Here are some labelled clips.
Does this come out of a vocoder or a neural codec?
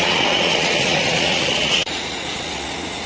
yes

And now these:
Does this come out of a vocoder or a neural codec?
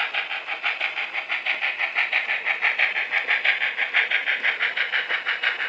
no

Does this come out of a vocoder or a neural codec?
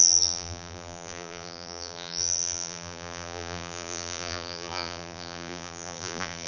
yes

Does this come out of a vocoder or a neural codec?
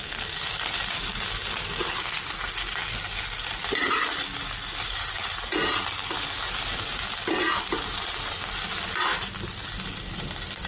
no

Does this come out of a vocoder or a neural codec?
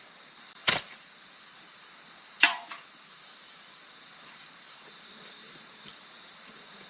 yes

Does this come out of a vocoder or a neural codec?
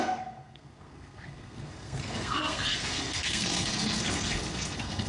yes